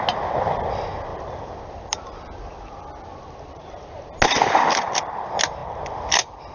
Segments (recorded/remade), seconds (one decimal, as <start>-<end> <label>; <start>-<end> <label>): 0.0-1.1 recorded; 1.1-3.9 remade; 3.9-6.5 recorded